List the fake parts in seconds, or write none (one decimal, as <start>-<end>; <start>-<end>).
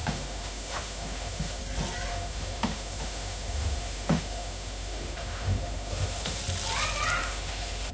0.0-1.6; 2.1-6.4; 7.2-7.9